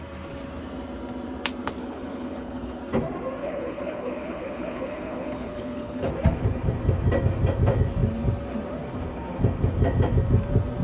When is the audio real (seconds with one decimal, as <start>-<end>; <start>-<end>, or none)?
0.0-1.8; 2.8-3.4; 6.1-10.8